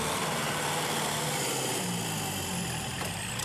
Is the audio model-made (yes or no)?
no